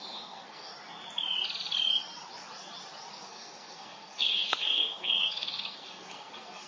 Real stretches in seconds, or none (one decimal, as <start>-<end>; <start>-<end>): 0.7-3.1